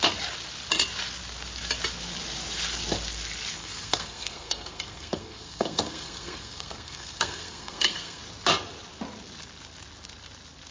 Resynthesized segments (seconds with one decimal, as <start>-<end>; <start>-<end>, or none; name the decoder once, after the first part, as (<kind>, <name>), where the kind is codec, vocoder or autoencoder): 3.6-8.2 (codec, SNAC)